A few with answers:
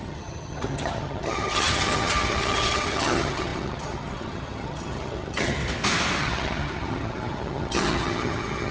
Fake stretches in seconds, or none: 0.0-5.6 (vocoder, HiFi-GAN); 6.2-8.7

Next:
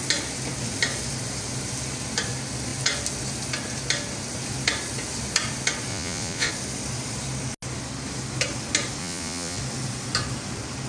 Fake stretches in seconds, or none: 5.9-6.5 (vocoder, Vocos); 9.0-9.6

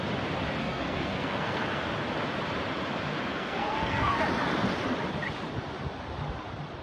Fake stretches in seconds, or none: 0.6-1.8 (codec, SNAC); 3.3-4.2

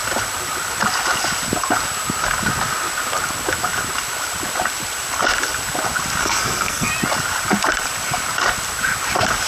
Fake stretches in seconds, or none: 6.2-6.9 (codec, SNAC)

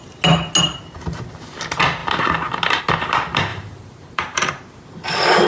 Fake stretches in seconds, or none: 3.5-4.5 (vocoder, BigVGAN v2)

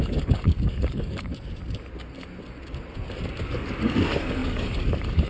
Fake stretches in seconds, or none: 0.0-1.3 (codec, DAC); 3.4-5.3